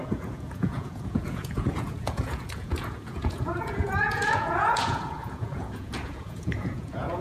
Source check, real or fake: fake